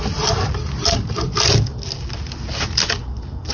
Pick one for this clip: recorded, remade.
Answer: recorded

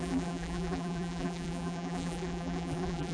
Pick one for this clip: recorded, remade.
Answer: remade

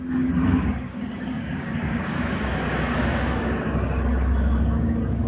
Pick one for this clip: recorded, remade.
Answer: remade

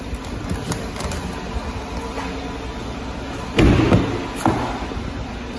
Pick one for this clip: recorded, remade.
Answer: recorded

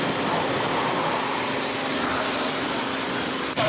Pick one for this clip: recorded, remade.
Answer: recorded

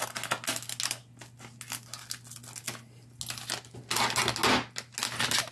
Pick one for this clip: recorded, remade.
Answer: recorded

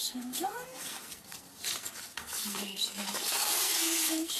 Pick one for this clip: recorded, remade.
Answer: remade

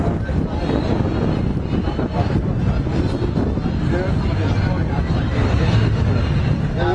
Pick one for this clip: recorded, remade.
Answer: recorded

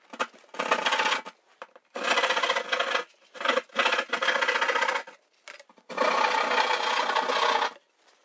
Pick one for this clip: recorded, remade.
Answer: recorded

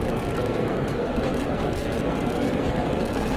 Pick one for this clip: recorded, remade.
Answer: remade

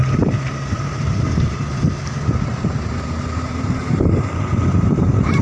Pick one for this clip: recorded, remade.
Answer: remade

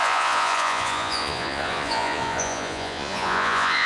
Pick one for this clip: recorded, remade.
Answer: remade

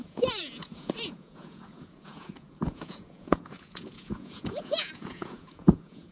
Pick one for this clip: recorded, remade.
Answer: remade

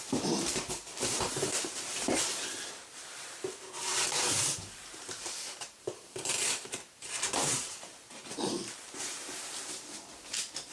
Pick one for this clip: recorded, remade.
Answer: remade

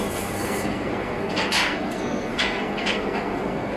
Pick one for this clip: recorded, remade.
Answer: remade